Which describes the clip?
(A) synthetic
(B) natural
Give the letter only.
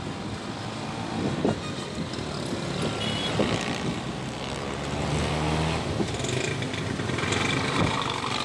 B